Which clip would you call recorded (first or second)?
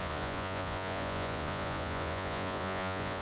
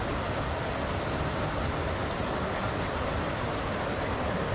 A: second